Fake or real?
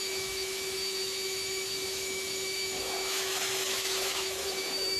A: fake